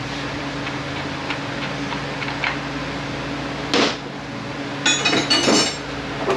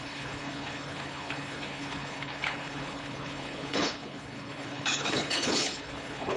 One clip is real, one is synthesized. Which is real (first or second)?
first